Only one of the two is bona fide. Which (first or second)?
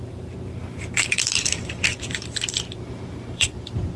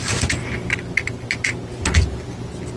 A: second